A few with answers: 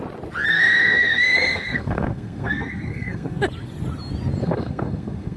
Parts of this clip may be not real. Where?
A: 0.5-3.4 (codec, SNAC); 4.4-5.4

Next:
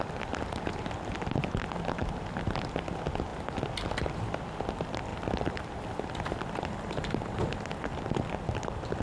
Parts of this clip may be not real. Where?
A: 2.0-2.6 (vocoder, BigVGAN v2); 5.1-9.0

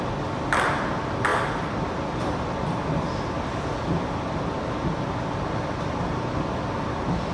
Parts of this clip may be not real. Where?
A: none